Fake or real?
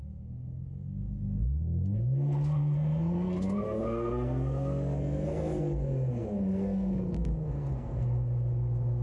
fake